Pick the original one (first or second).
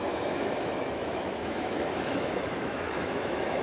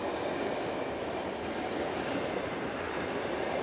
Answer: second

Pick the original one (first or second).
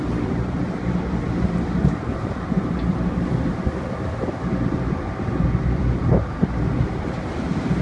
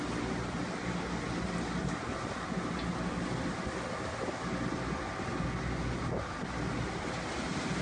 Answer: second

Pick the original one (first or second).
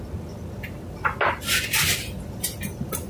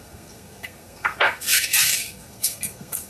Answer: first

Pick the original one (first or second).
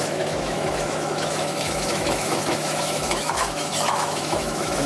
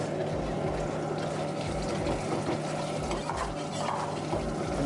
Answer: second